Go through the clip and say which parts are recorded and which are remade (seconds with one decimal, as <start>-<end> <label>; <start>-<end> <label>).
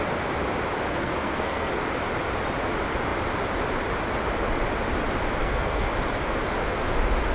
0.0-0.9 recorded; 0.9-1.7 remade; 1.7-5.4 recorded; 5.4-5.9 remade; 5.9-7.3 recorded